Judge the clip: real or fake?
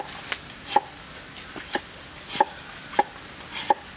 real